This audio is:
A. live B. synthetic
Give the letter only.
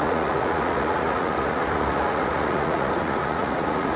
B